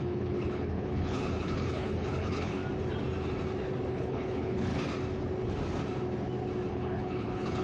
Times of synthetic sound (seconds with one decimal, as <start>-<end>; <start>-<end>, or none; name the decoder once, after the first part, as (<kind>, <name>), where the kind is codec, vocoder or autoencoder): 0.0-2.6 (codec, HILCodec); 3.9-4.7; 6.7-7.6